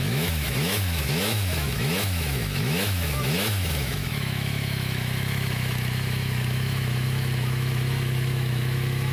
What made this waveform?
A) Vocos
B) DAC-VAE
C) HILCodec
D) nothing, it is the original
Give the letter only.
B